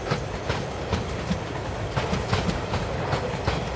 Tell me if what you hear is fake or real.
real